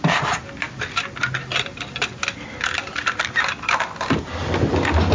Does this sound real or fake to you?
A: real